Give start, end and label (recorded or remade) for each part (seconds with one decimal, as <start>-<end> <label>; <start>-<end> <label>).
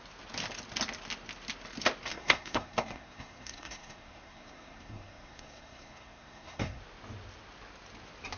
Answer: 0.0-2.1 recorded; 2.1-6.8 remade; 6.8-8.4 recorded